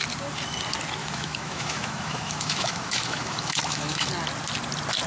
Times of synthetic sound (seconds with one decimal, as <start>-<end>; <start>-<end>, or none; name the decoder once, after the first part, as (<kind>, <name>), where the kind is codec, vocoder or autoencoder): 1.0-4.1 (autoencoder, DAC-VAE)